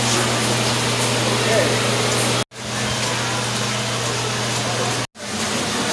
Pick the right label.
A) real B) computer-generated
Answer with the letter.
A